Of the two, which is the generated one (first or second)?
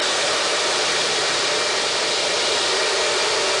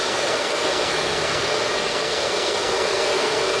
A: second